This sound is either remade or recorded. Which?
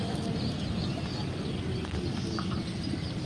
recorded